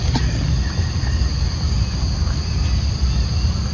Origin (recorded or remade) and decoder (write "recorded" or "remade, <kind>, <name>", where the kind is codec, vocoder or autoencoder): recorded